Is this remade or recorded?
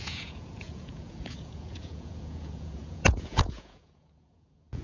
remade